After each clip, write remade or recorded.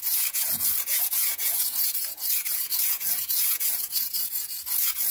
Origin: remade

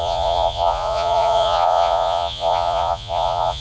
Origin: remade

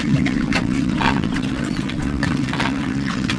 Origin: remade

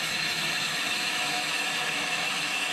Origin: remade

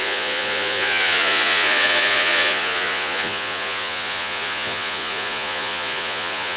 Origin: remade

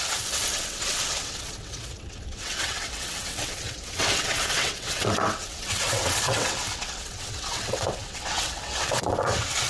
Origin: remade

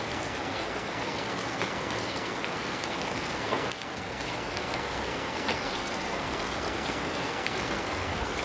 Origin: remade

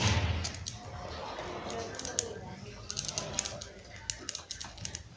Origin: recorded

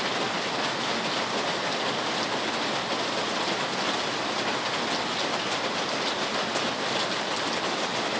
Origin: recorded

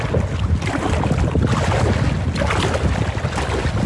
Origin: recorded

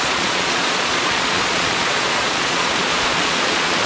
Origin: remade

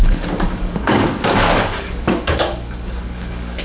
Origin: remade